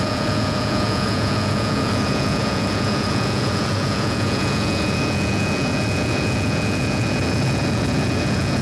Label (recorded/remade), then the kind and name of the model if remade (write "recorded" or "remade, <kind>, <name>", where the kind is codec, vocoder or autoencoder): remade, vocoder, Vocos